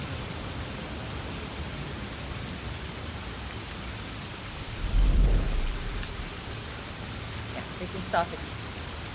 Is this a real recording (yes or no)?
yes